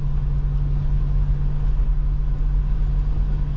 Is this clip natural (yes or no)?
yes